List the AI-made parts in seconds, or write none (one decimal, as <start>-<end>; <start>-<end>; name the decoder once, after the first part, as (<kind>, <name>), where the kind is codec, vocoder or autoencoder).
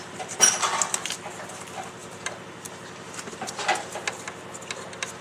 none